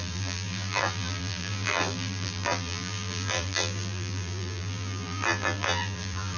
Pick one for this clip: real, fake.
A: fake